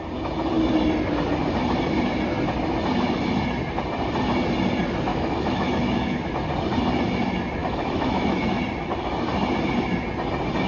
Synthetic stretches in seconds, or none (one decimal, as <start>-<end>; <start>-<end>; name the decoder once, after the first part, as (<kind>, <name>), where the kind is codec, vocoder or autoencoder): 5.1-6.2 (autoencoder, DAC-VAE); 7.6-8.6